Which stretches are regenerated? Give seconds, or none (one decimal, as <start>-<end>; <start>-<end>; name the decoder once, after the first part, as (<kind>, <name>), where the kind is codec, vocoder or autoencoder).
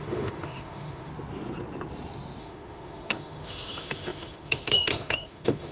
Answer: 0.0-1.1 (autoencoder, DAC-VAE); 2.4-5.7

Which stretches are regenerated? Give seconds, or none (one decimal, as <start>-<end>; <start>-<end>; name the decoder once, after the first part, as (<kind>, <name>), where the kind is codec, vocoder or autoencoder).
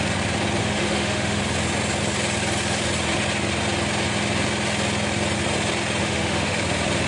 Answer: 0.6-1.4 (autoencoder, DAC-VAE); 6.0-6.6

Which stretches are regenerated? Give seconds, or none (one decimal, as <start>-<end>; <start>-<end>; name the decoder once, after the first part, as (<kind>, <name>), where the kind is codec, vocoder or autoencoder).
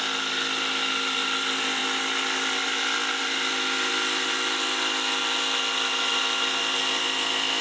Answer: none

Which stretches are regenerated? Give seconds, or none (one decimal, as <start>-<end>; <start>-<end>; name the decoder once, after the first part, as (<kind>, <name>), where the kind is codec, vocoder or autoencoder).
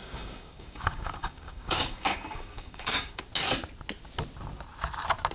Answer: 0.0-3.2 (codec, DAC)